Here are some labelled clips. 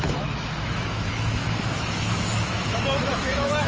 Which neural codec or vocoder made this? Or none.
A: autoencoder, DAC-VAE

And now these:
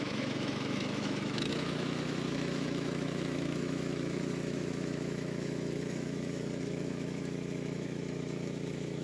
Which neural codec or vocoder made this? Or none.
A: autoencoder, DAC-VAE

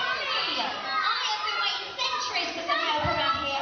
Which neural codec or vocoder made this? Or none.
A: none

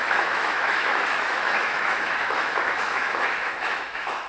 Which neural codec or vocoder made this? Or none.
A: autoencoder, DAC-VAE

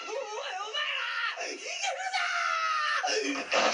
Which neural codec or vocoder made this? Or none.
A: none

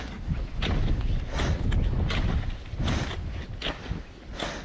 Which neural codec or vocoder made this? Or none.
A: none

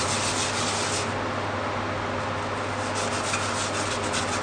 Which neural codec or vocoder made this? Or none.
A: none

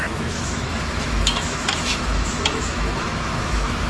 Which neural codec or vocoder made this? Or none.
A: autoencoder, DAC-VAE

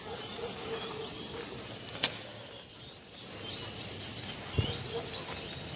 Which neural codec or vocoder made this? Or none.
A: none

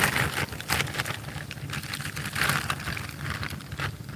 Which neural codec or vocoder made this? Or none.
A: none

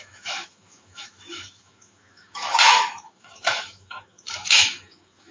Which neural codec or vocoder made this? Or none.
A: autoencoder, DAC-VAE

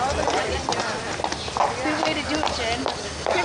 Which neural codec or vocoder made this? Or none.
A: none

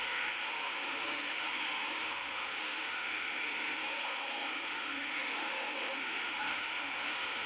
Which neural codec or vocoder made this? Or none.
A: autoencoder, DAC-VAE